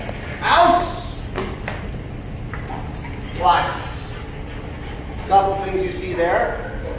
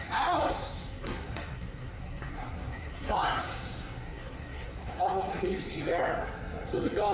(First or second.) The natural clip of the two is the first